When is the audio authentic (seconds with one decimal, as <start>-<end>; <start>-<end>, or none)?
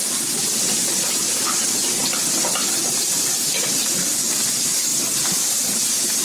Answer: 0.0-6.2